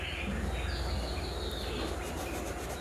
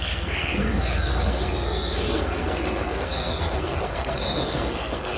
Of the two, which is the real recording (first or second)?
first